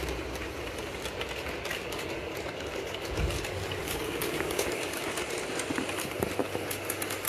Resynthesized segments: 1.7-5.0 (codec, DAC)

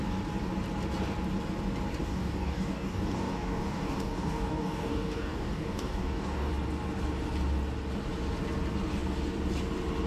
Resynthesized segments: 2.0-6.5 (codec, DAC)

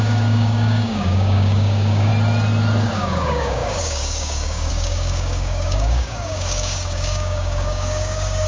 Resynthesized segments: 0.0-2.1 (codec, DAC); 2.8-8.5